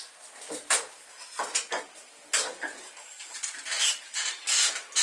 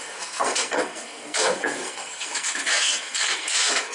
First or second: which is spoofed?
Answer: second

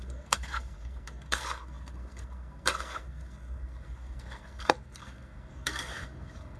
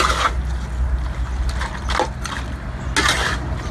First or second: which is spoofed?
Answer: first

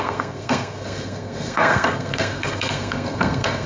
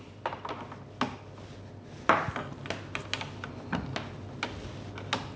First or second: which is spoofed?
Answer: first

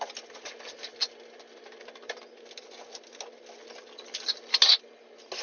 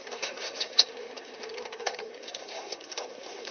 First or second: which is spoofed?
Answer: second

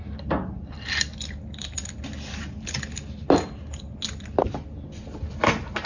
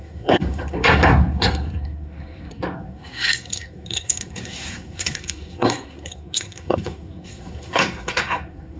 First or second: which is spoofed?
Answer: second